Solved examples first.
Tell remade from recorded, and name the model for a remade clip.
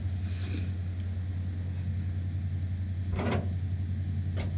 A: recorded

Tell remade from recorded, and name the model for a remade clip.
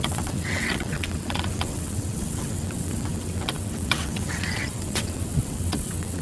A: remade, vocoder, WaveNeXt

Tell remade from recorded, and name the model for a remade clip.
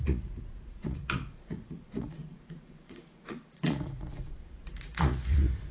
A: remade, vocoder, Vocos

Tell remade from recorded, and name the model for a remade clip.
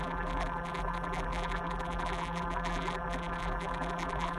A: remade, vocoder, BigVGAN v2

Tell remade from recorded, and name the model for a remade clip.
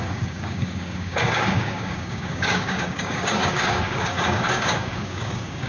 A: remade, codec, DAC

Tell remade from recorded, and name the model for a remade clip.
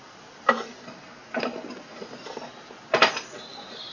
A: recorded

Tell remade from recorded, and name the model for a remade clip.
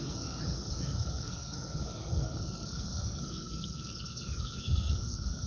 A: remade, codec, SNAC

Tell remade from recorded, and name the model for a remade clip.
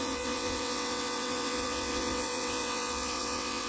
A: remade, vocoder, WaveNeXt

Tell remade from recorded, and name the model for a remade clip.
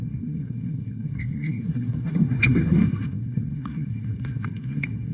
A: remade, codec, SNAC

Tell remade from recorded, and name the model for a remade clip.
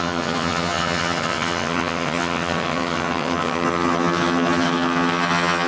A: remade, vocoder, HiFi-GAN